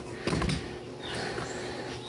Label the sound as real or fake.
real